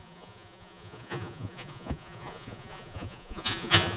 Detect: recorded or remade remade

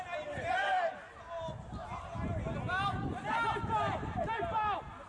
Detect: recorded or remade recorded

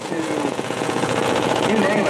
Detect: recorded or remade remade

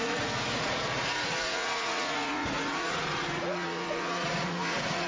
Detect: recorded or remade remade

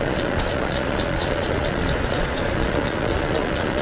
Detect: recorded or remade remade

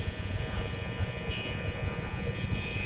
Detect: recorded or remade remade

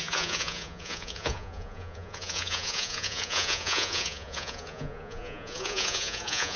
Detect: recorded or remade remade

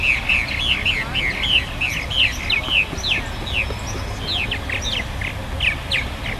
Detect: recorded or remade recorded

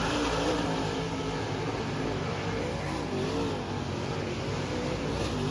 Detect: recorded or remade recorded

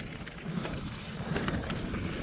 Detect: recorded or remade recorded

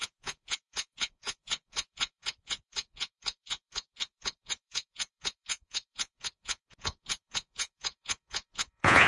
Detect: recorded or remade remade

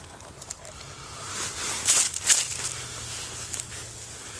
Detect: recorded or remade recorded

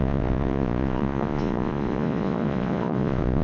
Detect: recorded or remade remade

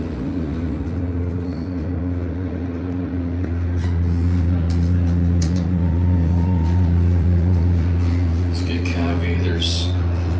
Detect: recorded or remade remade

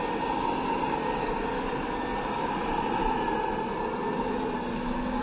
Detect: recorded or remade recorded